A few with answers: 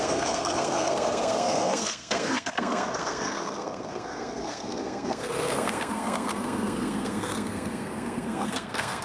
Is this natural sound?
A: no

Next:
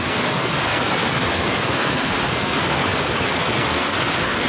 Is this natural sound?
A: no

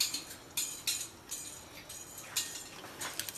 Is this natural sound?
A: yes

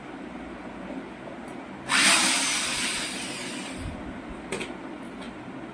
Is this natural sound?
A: yes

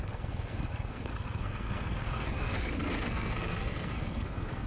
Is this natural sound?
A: no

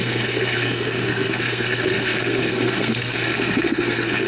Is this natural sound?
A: no